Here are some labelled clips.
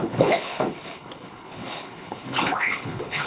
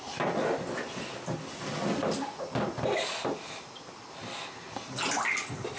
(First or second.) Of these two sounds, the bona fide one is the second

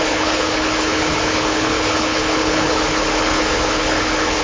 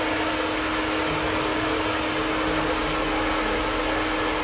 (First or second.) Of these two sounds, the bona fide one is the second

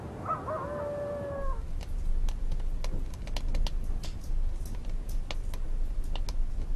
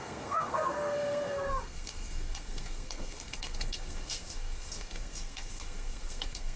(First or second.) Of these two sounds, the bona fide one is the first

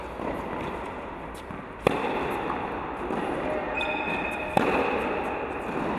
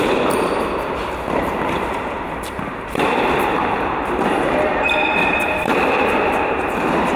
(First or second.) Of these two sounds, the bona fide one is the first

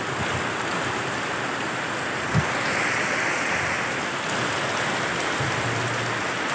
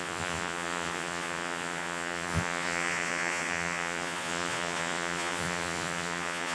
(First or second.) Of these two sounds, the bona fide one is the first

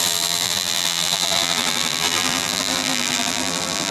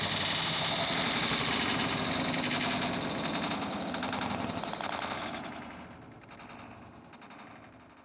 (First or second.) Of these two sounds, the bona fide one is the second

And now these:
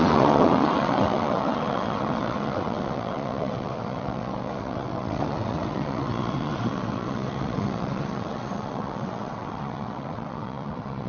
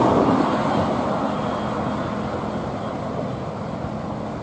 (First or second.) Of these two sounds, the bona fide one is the second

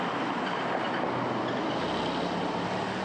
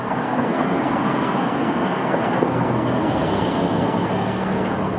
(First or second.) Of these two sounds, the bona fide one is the first